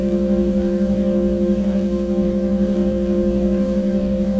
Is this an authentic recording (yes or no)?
no